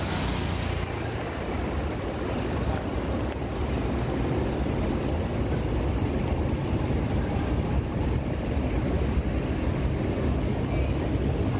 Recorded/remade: recorded